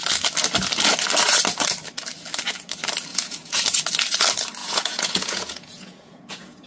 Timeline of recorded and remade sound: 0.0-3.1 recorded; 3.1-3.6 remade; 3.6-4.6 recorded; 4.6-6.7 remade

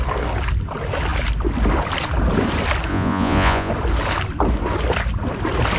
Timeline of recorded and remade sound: 0.0-2.9 recorded; 2.9-3.7 remade; 3.7-5.8 recorded